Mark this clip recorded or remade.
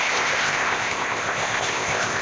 remade